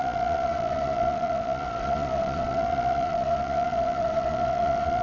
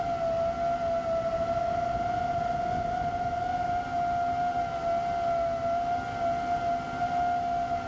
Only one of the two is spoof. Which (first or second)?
first